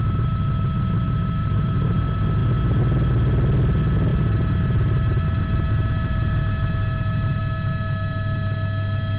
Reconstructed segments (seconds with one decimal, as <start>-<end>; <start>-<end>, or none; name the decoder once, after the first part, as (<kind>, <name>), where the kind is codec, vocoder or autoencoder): 1.4-2.0 (vocoder, BigVGAN v2); 4.1-7.4